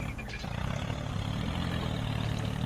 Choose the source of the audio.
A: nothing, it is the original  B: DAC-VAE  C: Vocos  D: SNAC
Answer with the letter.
A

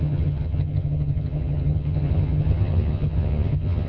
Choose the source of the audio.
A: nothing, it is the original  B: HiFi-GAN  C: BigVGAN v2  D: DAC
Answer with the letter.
B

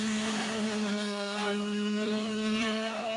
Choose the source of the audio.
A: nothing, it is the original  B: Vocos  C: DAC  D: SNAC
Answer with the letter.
D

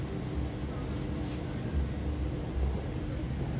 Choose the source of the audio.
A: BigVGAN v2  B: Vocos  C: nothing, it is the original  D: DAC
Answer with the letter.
C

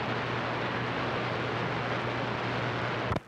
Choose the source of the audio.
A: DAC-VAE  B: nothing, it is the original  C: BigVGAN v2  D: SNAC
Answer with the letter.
B